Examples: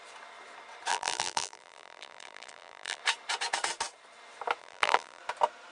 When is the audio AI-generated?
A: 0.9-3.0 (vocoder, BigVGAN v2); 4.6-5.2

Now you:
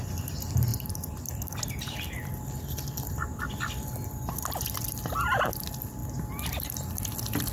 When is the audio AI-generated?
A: none

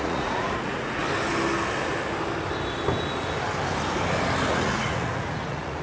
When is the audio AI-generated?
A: 0.0-1.0 (vocoder, Vocos); 4.5-5.8

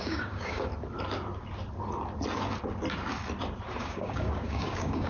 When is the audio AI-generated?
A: 0.0-0.7 (codec, DAC); 3.8-5.1

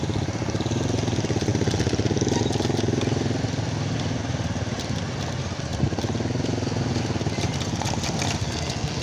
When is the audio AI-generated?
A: 8.4-9.0 (codec, SNAC)

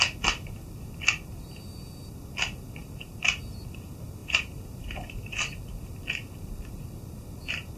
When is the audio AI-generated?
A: 2.8-3.4 (vocoder, BigVGAN v2); 4.2-5.6

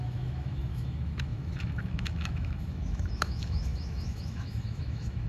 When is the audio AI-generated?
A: 0.0-5.3 (autoencoder, DAC-VAE)